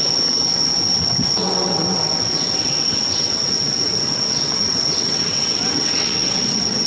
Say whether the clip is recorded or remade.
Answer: remade